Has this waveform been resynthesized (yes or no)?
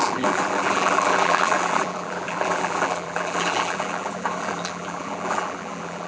yes